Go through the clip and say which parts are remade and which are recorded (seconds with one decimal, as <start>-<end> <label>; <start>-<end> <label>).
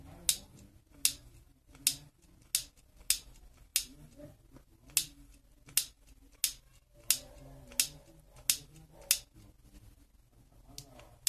0.0-11.3 recorded